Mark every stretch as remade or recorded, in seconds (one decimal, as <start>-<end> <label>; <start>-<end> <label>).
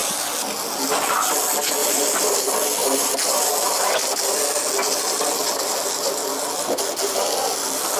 0.0-1.8 recorded; 1.8-2.4 remade; 2.4-2.8 recorded; 2.8-3.5 remade; 3.5-8.0 recorded